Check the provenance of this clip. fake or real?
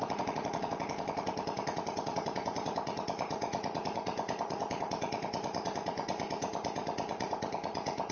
fake